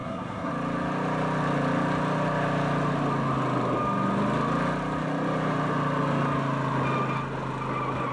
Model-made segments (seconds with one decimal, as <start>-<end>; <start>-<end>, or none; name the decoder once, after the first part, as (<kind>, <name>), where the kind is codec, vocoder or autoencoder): 0.0-0.5 (codec, SNAC)